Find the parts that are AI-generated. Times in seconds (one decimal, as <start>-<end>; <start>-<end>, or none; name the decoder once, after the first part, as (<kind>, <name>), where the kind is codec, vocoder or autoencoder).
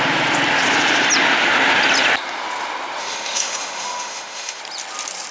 3.0-4.6 (autoencoder, DAC-VAE)